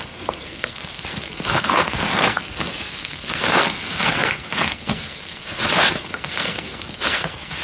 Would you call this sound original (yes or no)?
no